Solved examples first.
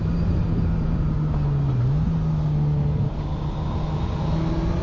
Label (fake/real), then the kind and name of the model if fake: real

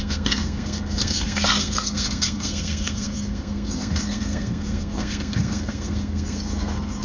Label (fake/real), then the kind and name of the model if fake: fake, codec, SNAC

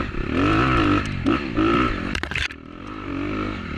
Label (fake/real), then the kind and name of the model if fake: fake, vocoder, BigVGAN v2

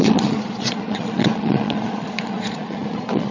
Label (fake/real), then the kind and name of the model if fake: fake, vocoder, Vocos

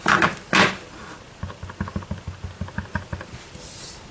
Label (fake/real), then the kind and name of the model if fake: real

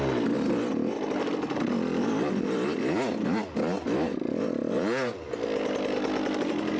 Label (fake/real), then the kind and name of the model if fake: real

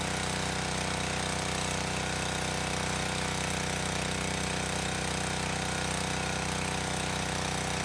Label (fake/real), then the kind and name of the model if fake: real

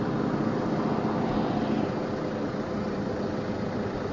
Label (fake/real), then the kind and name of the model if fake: real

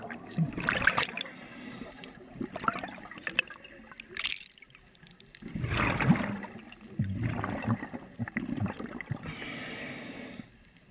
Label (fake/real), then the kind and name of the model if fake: real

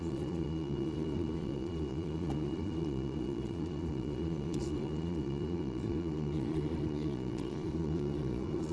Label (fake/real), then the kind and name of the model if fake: fake, vocoder, Vocos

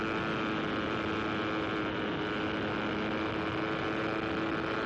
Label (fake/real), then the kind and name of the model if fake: real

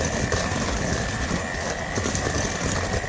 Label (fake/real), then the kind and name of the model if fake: real